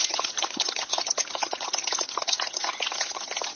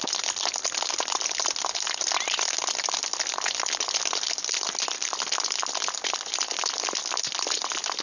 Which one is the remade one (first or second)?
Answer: first